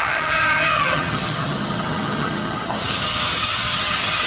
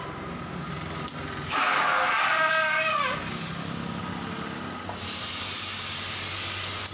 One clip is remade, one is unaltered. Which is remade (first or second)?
first